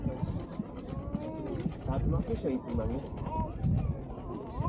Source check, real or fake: real